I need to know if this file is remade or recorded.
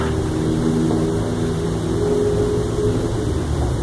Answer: recorded